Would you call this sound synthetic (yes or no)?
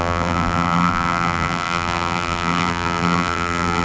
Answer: yes